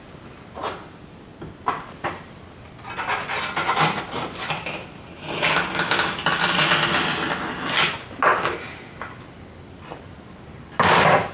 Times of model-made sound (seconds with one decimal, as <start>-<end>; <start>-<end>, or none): none